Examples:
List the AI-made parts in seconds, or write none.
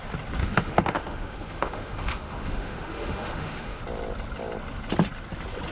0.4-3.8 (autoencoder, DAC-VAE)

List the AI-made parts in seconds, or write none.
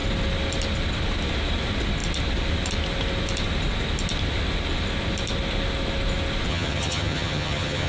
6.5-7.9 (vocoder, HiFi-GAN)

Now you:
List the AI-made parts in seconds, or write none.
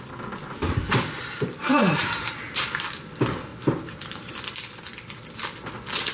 1.6-2.3 (vocoder, BigVGAN v2); 3.5-4.3